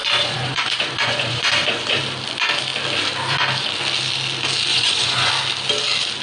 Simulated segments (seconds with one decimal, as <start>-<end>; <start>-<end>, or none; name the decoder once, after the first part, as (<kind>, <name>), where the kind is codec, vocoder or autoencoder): 0.0-2.0 (vocoder, Vocos); 4.7-5.3